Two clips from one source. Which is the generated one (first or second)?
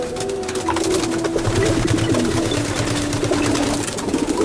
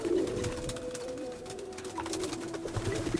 second